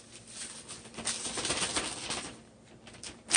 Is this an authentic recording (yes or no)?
yes